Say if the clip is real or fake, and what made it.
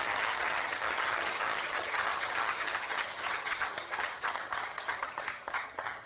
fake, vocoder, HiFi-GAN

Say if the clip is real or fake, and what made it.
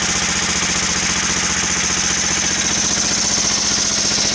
real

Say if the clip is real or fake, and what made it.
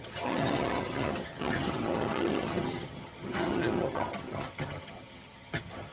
fake, vocoder, HiFi-GAN